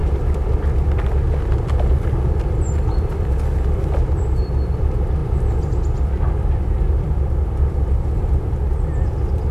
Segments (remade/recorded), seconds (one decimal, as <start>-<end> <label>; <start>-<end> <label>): 0.0-5.2 remade; 5.2-6.0 recorded; 6.0-9.5 remade